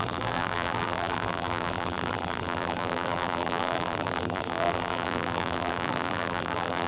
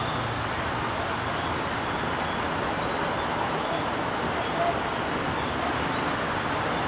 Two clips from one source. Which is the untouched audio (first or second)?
second